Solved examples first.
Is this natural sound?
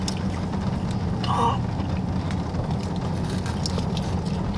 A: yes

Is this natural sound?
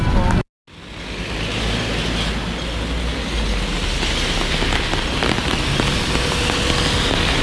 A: yes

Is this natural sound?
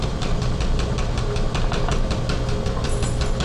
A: yes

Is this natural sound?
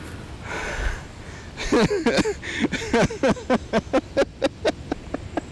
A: yes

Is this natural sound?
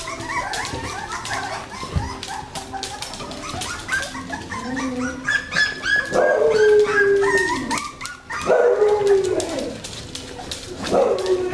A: yes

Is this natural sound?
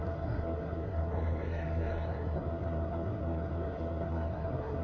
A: no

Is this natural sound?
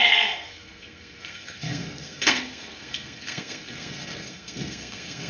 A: no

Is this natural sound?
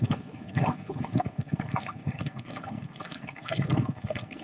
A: no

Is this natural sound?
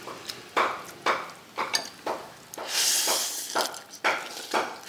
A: yes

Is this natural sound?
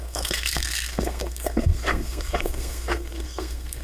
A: no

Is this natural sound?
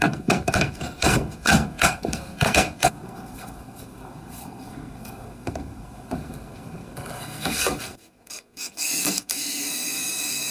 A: no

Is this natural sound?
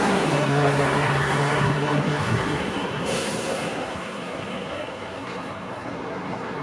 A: no